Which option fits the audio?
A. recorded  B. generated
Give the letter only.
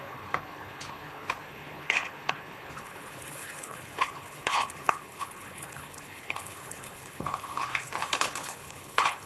B